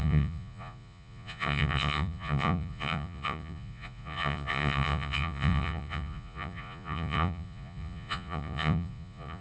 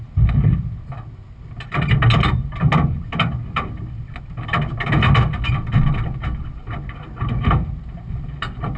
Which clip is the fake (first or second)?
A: first